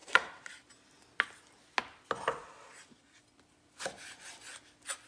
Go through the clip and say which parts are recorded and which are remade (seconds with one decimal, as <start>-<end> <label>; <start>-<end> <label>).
0.0-0.5 remade; 0.5-2.4 recorded; 2.4-3.2 remade; 3.2-5.1 recorded